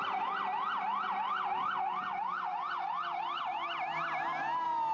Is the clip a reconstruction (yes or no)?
no